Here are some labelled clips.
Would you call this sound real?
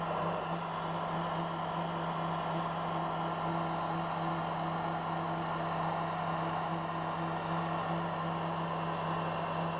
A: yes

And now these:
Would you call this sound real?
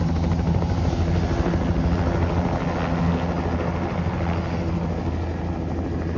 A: yes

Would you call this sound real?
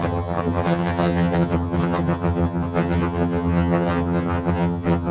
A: no